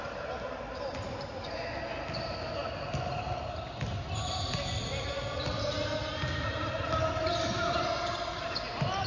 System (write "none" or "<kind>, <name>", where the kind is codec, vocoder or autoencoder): none